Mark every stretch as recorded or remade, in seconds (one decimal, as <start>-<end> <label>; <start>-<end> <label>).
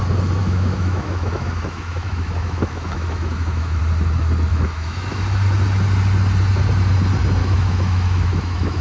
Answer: 0.0-0.4 recorded; 0.4-3.8 remade; 3.8-4.5 recorded; 4.5-5.2 remade; 5.2-7.4 recorded; 7.4-8.8 remade